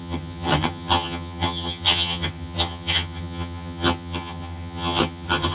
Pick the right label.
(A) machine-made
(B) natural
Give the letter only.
A